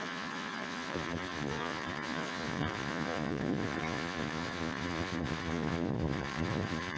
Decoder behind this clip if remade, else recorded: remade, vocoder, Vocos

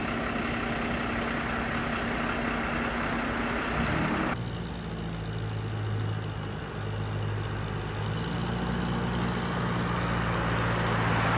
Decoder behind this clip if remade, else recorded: recorded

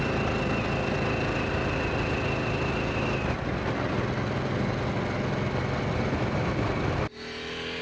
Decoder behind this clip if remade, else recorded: recorded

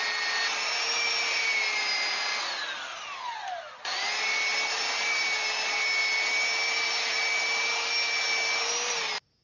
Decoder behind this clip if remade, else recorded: recorded